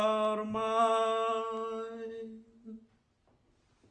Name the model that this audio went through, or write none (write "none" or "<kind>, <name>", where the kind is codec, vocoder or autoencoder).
none